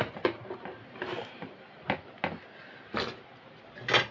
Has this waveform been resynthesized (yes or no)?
no